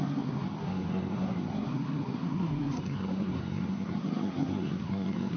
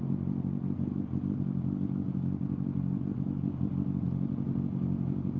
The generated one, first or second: first